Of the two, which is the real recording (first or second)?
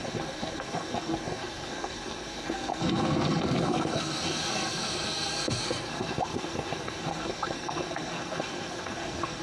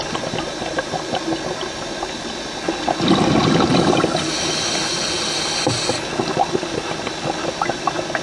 second